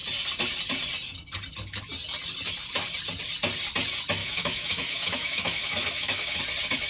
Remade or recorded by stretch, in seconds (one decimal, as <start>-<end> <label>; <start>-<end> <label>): 0.0-4.2 recorded; 4.2-6.4 remade; 6.4-6.9 recorded